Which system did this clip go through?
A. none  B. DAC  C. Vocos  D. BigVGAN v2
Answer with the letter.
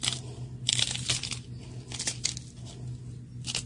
A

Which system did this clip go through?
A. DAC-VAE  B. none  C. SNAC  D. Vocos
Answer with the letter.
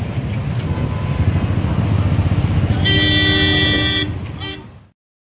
B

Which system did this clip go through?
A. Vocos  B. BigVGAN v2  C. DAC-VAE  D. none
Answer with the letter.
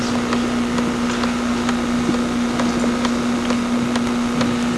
D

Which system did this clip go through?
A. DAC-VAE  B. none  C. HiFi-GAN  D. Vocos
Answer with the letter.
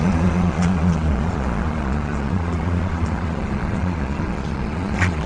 D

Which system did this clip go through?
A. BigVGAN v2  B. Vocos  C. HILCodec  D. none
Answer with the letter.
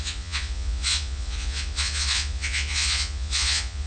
B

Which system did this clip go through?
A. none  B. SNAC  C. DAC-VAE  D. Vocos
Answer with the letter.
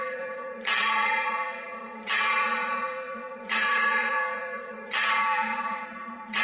D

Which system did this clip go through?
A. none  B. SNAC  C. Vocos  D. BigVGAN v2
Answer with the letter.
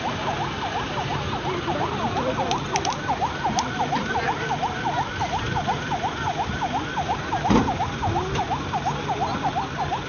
A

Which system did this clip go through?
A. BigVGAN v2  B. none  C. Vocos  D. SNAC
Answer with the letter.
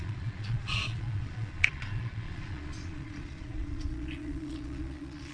C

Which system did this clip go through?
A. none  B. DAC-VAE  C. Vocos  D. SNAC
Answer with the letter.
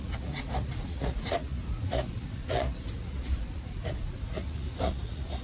C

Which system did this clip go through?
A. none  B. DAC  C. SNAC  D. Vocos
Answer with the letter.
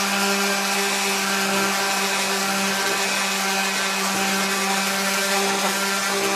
A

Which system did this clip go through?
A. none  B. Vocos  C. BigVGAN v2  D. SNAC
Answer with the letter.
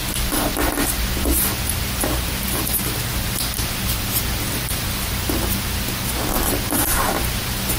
A